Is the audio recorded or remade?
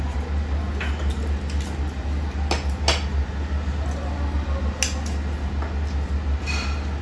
recorded